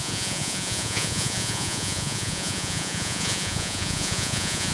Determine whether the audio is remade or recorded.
remade